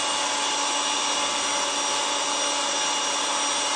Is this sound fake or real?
real